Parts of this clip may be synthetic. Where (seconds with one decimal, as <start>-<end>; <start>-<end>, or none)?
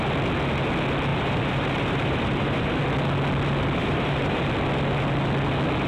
1.1-2.8; 3.8-4.4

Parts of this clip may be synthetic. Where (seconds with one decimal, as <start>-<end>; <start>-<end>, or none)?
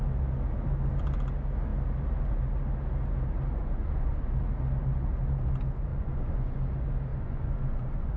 3.6-4.4; 5.9-6.6; 7.1-8.2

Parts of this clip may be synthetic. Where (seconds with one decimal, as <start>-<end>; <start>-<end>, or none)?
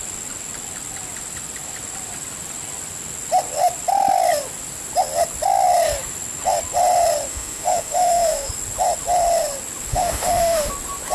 7.3-8.5; 9.9-10.7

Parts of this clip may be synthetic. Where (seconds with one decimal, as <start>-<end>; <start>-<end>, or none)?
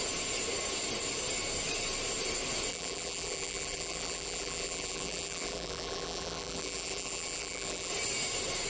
2.7-7.9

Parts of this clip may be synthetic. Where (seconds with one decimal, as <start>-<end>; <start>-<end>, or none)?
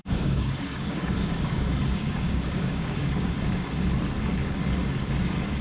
0.0-3.3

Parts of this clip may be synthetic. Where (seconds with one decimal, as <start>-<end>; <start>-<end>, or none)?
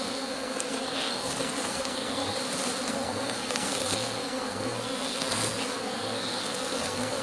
0.0-2.2; 2.9-7.2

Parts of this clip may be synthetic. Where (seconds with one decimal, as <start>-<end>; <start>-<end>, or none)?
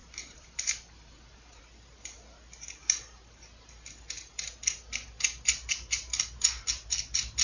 0.0-1.6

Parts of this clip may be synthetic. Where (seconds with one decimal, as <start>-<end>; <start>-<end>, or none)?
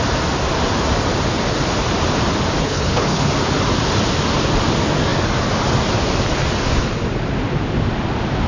2.6-3.3